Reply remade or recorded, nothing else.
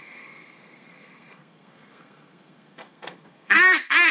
remade